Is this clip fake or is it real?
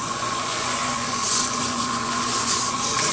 fake